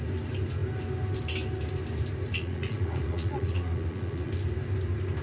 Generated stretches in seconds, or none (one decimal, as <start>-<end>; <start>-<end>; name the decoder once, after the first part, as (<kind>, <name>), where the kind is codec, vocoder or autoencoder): 2.3-4.3 (vocoder, Vocos)